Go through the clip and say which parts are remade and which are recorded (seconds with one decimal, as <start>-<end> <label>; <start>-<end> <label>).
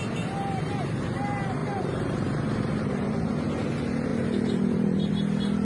0.0-1.6 recorded; 1.6-2.8 remade; 2.8-4.1 recorded; 4.1-5.1 remade; 5.1-5.6 recorded